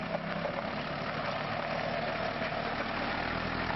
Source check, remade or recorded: recorded